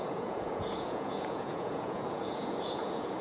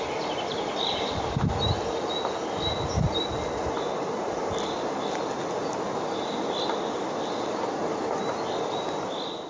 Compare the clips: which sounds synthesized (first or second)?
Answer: first